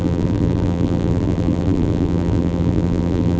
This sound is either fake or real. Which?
fake